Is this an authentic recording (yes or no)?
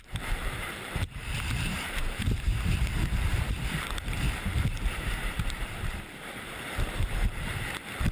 no